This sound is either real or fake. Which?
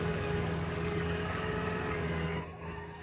fake